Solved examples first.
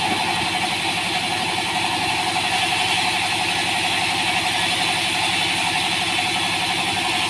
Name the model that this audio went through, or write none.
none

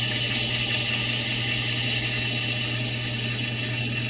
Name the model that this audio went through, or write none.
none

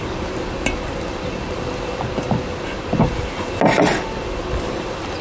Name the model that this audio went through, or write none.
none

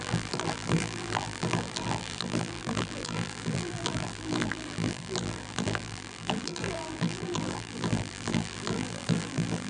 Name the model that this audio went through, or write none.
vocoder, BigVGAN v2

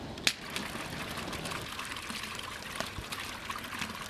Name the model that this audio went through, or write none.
none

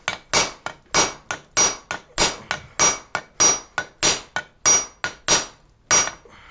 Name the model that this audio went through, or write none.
none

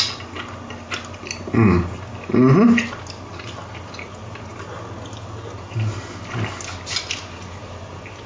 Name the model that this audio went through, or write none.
none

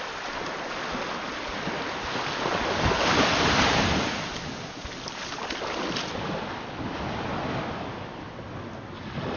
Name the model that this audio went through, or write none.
none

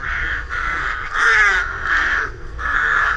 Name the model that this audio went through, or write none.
codec, SNAC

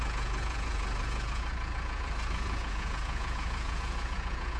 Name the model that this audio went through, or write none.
vocoder, Vocos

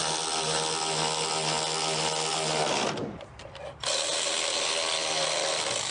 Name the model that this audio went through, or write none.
none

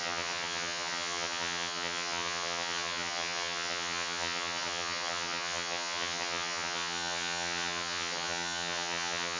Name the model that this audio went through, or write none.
vocoder, HiFi-GAN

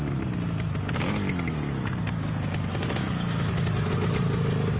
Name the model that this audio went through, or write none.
none